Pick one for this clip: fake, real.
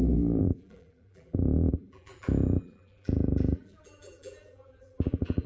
fake